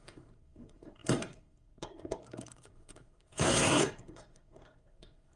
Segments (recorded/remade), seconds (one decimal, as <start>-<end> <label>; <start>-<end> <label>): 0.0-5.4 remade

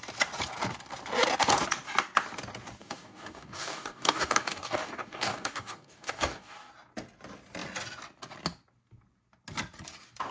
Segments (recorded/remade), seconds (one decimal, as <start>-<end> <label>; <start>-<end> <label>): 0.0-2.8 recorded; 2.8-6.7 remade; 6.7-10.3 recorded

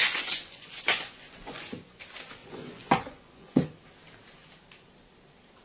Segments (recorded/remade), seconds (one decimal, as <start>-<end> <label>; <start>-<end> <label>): 0.0-2.0 remade; 2.0-2.4 recorded; 2.4-3.8 remade; 3.8-5.6 recorded

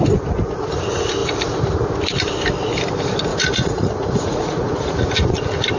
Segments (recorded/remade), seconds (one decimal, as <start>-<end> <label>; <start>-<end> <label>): 0.0-3.3 recorded; 3.3-5.0 remade; 5.0-5.8 recorded

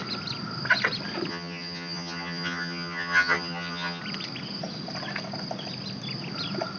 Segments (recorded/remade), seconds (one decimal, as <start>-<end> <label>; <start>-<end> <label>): 0.0-1.3 recorded; 1.3-4.0 remade; 4.0-6.8 recorded

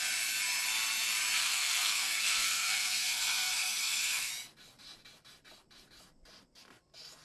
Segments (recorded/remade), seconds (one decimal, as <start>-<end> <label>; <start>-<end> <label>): 0.0-1.4 recorded; 1.4-4.3 remade; 4.3-7.2 recorded

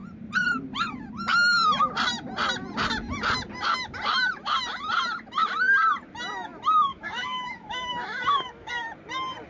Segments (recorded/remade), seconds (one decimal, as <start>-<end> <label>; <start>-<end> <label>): 0.0-6.9 recorded; 6.9-8.7 remade; 8.7-9.5 recorded

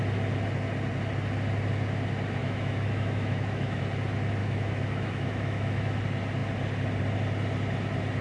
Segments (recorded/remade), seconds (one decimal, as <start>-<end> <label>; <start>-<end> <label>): 0.0-2.4 recorded; 2.4-3.8 remade; 3.8-4.4 recorded; 4.4-6.0 remade; 6.0-8.2 recorded